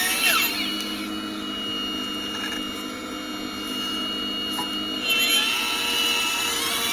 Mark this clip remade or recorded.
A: recorded